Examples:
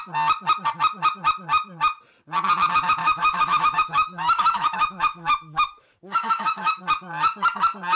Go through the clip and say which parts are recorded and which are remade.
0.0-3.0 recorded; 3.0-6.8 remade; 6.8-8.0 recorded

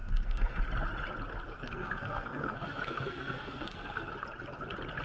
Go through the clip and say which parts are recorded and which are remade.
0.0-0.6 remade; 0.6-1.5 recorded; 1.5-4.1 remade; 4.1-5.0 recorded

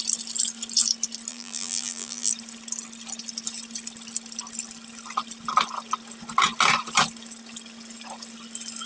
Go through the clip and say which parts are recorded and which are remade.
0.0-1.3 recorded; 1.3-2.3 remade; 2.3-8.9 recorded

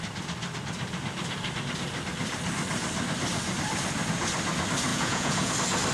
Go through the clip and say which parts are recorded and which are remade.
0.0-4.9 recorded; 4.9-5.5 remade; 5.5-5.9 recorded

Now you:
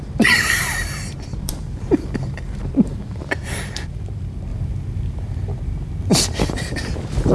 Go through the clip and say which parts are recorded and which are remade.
0.0-4.5 remade; 4.5-6.1 recorded; 6.1-7.3 remade

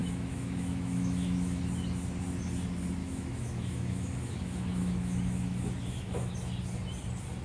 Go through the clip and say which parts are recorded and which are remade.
0.0-1.6 remade; 1.6-3.0 recorded; 3.0-6.3 remade; 6.3-7.4 recorded

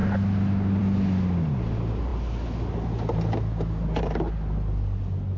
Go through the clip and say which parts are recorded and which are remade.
0.0-5.4 recorded

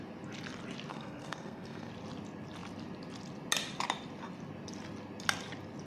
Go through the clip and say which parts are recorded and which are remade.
0.0-0.9 recorded; 0.9-1.9 remade; 1.9-5.9 recorded